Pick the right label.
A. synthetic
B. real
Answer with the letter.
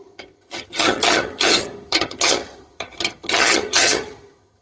A